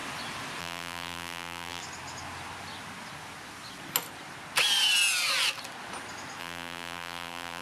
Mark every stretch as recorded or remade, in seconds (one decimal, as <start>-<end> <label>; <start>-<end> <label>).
0.0-0.6 recorded; 0.6-1.8 remade; 1.8-6.4 recorded; 6.4-7.6 remade